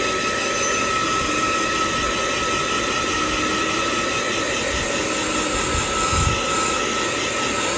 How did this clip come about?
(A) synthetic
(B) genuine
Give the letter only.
B